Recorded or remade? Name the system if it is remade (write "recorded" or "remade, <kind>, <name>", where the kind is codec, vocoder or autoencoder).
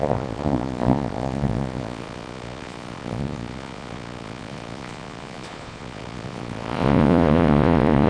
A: remade, vocoder, Vocos